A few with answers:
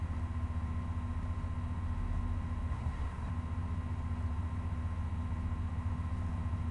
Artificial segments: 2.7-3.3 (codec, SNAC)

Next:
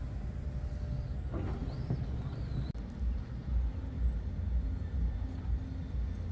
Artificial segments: none

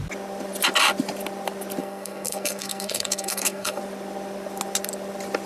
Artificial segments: 1.8-3.8 (codec, SNAC)

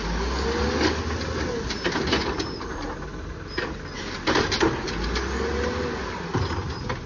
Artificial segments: none